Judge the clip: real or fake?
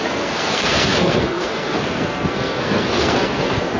fake